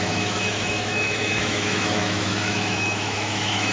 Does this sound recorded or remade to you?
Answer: remade